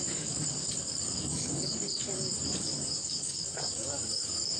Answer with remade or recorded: remade